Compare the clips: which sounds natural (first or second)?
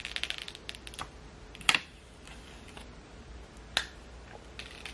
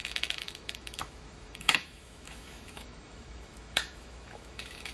first